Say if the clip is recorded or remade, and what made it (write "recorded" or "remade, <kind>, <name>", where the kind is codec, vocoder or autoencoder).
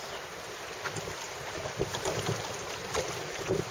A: recorded